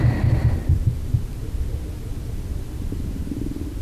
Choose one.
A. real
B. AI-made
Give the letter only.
B